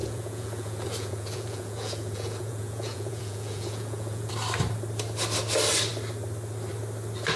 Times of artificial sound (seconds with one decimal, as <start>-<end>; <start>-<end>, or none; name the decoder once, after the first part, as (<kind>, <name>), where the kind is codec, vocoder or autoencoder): 0.0-4.3 (vocoder, Vocos)